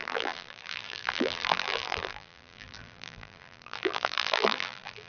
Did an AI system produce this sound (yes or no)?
yes